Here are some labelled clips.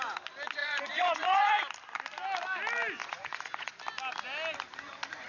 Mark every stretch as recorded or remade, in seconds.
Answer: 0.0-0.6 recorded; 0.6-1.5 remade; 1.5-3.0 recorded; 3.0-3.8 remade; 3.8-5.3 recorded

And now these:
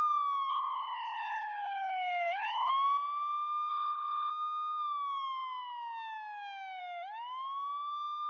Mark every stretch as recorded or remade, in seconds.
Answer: 0.0-0.5 recorded; 0.5-2.7 remade; 2.7-3.7 recorded; 3.7-4.3 remade; 4.3-8.3 recorded

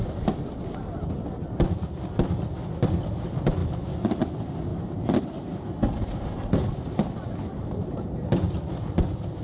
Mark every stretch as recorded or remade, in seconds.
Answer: 0.0-3.6 recorded; 3.6-4.2 remade; 4.2-9.4 recorded

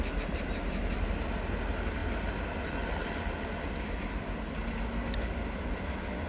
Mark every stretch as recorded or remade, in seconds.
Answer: 0.0-6.3 recorded

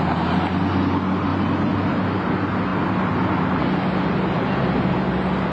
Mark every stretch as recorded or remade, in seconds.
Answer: 0.0-5.5 recorded

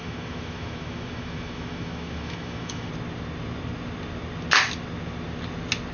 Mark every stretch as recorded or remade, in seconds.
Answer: 0.0-2.9 remade; 2.9-5.9 recorded

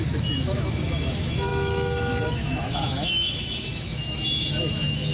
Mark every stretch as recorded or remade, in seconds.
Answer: 0.0-5.1 remade

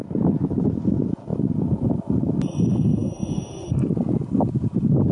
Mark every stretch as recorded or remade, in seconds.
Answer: 0.0-1.3 recorded; 1.3-2.0 remade; 2.0-5.1 recorded